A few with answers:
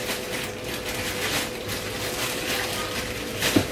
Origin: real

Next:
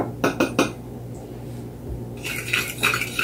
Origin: real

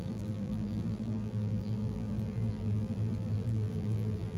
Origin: fake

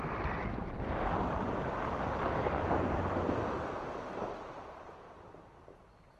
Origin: real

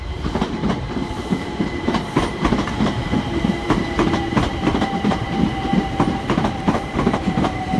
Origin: fake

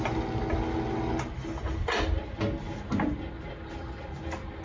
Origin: real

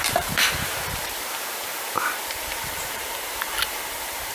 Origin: fake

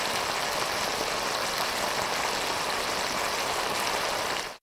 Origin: real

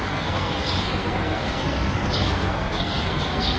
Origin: fake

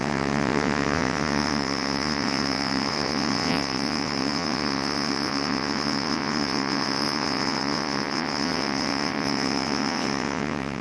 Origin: fake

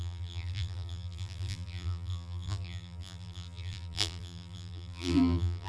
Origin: fake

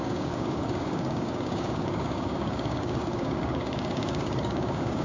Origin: fake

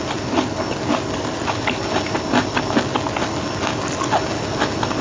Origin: real